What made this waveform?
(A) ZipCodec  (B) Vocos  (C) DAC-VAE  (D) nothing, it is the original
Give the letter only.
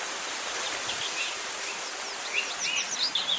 D